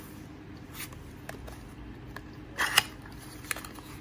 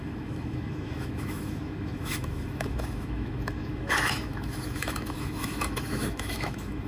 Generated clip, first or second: second